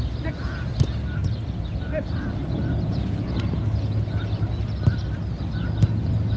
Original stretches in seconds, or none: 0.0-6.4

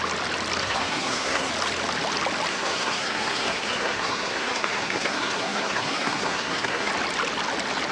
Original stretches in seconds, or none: 0.0-0.6; 1.5-2.5; 6.9-7.9

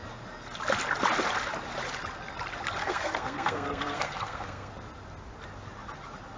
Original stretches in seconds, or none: 0.0-2.8; 4.7-6.4